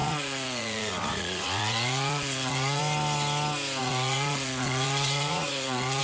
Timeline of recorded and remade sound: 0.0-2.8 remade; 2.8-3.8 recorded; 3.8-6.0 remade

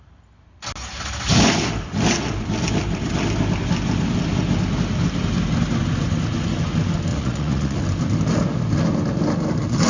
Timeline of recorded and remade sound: 0.0-7.1 recorded; 7.1-7.8 remade; 7.8-9.9 recorded

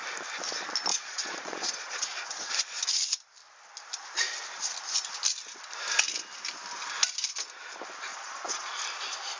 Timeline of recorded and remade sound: 0.0-0.9 recorded; 0.9-2.5 remade; 2.5-8.1 recorded; 8.1-8.8 remade; 8.8-9.4 recorded

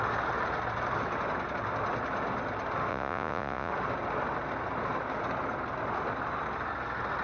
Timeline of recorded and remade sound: 0.0-2.9 recorded; 2.9-3.7 remade; 3.7-7.2 recorded

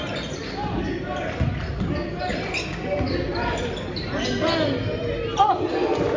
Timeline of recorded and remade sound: 0.0-6.2 recorded

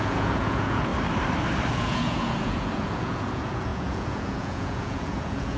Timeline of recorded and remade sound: 0.0-0.9 remade; 0.9-1.7 recorded; 1.7-5.6 remade

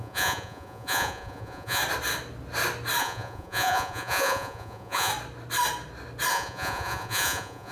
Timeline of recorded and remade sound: 0.0-1.8 remade; 1.8-3.0 recorded; 3.0-5.1 remade; 5.1-6.3 recorded; 6.3-7.7 remade

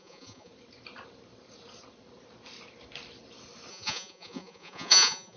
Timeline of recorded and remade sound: 0.0-0.5 remade; 0.5-3.7 recorded; 3.7-5.4 remade